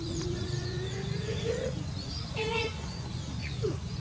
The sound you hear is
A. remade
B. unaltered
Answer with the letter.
A